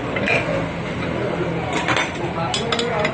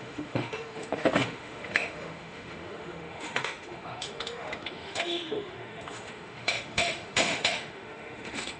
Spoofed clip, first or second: second